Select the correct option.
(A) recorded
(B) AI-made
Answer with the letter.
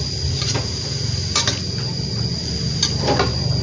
A